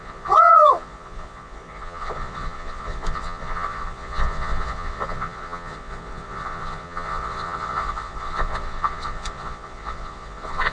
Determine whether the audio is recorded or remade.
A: remade